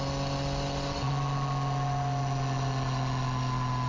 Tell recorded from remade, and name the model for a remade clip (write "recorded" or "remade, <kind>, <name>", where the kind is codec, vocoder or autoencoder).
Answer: recorded